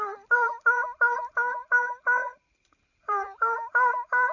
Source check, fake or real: fake